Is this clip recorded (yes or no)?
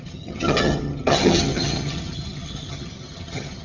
no